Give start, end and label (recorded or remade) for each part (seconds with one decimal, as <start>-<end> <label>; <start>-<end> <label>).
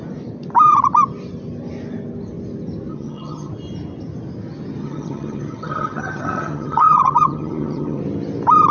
0.0-2.9 recorded; 2.9-3.5 remade; 3.5-4.8 recorded; 4.8-8.0 remade; 8.0-8.7 recorded